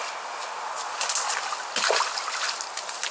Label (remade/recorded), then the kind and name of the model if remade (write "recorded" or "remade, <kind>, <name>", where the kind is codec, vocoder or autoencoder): recorded